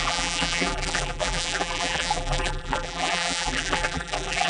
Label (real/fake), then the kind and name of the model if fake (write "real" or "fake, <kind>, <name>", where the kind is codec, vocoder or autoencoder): fake, vocoder, BigVGAN v2